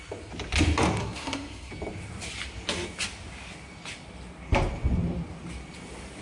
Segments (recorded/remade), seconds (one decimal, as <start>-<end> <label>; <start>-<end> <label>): 0.0-1.0 recorded; 1.0-1.7 remade; 1.7-6.2 recorded